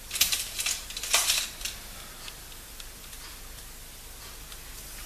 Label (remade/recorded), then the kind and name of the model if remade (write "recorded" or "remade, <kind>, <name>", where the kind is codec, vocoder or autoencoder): recorded